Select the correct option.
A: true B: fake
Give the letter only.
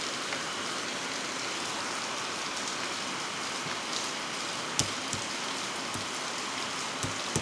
A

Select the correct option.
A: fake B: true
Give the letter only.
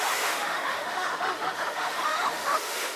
A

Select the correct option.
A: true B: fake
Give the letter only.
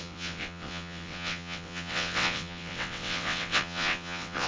B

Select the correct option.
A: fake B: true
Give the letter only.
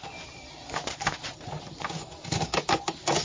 B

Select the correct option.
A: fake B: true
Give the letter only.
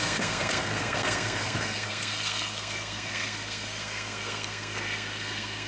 A